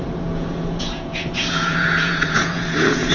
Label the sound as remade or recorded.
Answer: remade